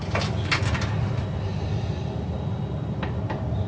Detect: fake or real real